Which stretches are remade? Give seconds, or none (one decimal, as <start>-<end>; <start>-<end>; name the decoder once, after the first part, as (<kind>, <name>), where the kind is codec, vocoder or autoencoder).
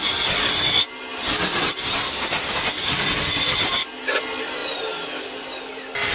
0.0-6.1 (vocoder, BigVGAN v2)